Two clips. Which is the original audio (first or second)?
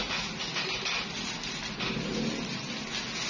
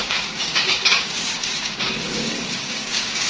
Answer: first